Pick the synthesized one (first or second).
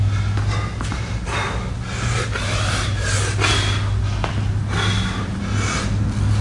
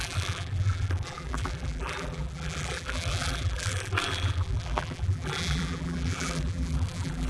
second